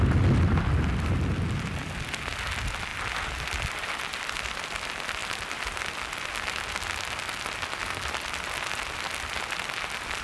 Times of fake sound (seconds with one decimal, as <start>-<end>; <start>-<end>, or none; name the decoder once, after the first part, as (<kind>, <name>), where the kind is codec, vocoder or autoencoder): none